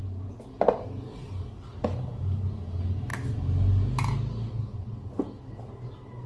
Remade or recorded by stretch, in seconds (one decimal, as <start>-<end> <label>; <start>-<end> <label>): 0.0-6.3 recorded